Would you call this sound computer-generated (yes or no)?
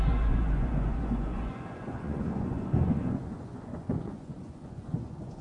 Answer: yes